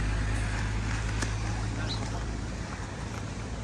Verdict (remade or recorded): recorded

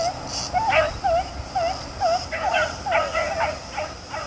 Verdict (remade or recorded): recorded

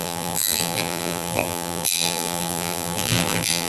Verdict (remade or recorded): remade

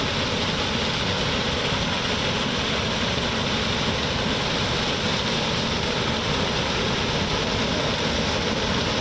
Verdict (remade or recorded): recorded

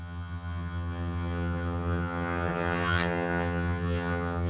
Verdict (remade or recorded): remade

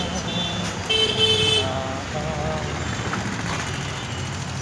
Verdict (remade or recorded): recorded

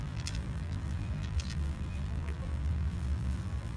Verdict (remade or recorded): remade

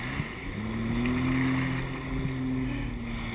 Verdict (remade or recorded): recorded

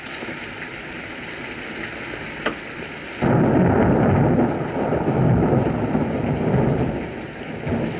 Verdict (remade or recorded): recorded